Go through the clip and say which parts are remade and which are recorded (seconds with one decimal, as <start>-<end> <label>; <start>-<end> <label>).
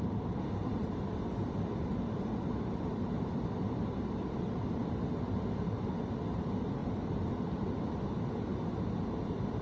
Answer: 0.0-1.9 recorded; 1.9-4.8 remade; 4.8-6.8 recorded; 6.8-7.9 remade; 7.9-9.6 recorded